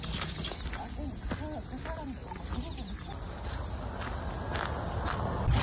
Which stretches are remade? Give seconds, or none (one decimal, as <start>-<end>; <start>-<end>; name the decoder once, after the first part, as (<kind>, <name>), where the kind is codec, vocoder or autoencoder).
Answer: none